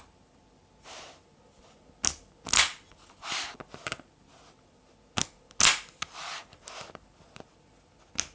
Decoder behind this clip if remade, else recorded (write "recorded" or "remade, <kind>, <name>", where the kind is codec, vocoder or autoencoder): recorded